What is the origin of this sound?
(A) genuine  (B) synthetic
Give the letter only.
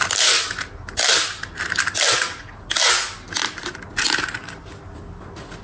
A